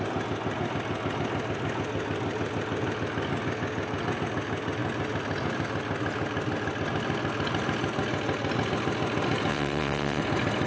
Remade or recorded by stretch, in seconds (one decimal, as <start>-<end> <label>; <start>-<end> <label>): 0.0-9.5 recorded; 9.5-10.2 remade; 10.2-10.7 recorded